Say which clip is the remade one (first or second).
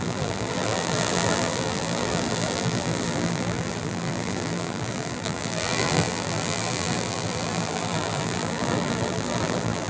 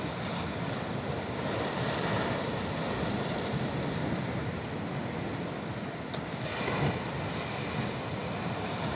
first